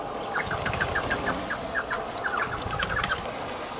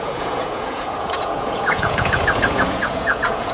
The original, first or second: first